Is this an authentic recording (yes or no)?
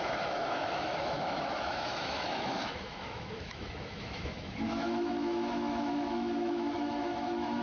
no